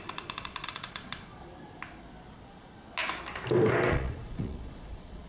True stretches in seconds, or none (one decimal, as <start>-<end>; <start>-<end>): 1.5-3.9